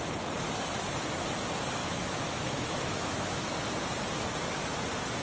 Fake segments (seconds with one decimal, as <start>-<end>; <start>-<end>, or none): 1.8-3.5